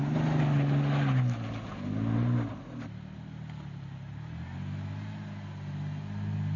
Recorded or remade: recorded